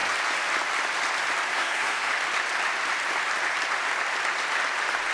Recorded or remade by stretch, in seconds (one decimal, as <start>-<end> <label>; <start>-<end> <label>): 0.0-1.5 recorded; 1.5-2.1 remade; 2.1-5.1 recorded